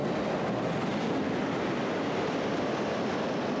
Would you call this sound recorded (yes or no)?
no